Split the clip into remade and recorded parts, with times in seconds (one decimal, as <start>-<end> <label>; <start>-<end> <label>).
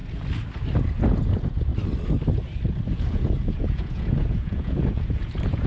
0.0-1.1 recorded; 1.1-1.7 remade; 1.7-2.9 recorded; 2.9-5.7 remade